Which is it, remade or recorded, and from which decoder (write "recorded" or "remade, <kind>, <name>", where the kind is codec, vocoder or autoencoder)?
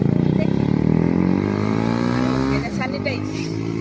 recorded